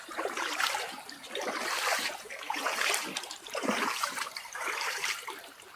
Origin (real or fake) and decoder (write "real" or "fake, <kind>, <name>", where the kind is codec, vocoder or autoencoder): fake, vocoder, BigVGAN v2